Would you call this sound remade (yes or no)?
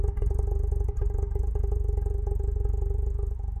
yes